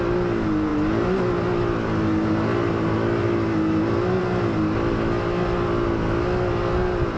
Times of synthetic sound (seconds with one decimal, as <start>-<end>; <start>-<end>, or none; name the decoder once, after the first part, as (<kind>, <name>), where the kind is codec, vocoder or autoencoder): none

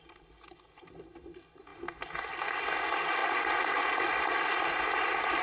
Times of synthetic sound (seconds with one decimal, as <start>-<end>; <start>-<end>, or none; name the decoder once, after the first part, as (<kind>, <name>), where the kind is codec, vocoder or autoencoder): none